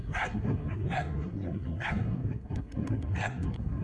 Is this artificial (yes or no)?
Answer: yes